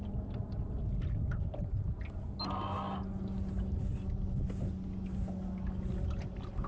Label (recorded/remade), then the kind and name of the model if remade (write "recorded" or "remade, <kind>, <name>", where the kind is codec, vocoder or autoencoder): recorded